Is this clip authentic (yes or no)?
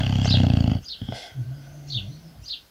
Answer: yes